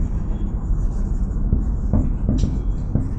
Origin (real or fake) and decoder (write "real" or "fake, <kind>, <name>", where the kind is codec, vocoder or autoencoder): real